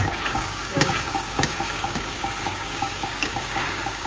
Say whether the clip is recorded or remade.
remade